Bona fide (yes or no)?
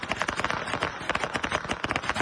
yes